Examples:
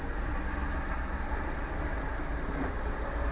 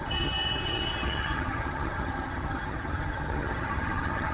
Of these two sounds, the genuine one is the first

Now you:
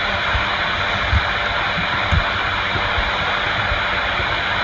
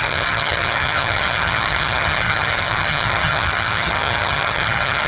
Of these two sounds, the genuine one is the first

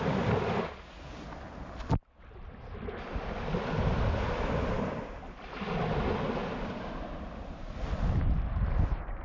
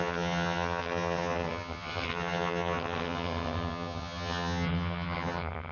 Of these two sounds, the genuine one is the first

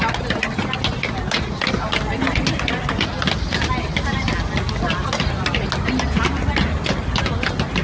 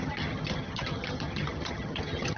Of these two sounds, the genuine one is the first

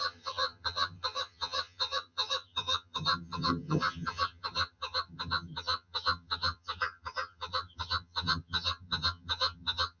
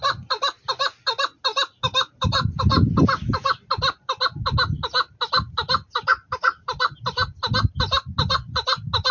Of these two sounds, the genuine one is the second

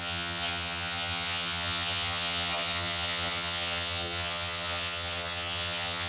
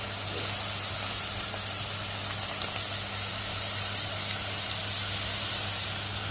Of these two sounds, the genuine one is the second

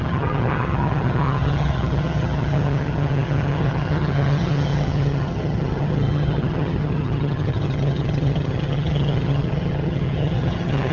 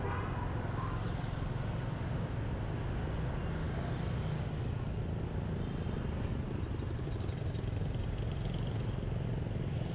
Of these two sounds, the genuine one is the second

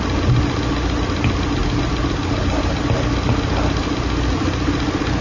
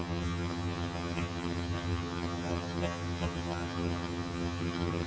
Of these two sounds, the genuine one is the first